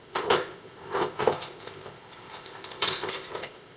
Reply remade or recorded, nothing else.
remade